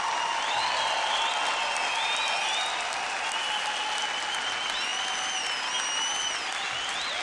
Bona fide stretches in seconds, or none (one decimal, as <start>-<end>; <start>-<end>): 0.0-7.2